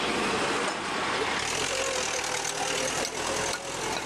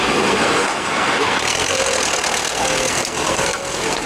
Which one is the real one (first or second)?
first